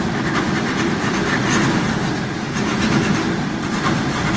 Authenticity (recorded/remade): recorded